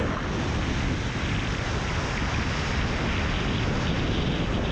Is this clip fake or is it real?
real